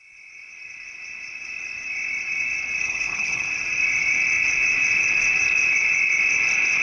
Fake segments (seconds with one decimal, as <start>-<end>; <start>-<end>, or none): 2.8-3.5

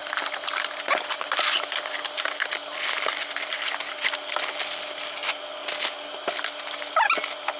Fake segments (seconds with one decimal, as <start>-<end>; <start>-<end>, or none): none